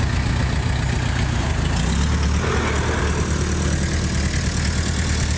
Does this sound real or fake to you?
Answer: real